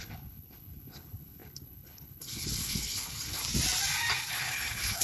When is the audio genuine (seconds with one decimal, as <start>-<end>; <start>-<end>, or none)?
3.4-4.3